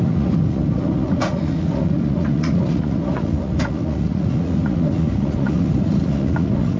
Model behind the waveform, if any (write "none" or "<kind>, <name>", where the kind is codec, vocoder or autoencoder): vocoder, Vocos